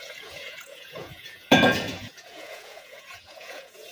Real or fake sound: fake